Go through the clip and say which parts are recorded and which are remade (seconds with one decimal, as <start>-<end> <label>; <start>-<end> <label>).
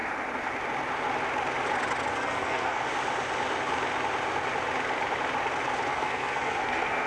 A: 0.0-2.1 recorded; 2.1-2.8 remade; 2.8-5.9 recorded; 5.9-7.1 remade